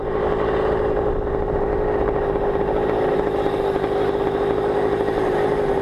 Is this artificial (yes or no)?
no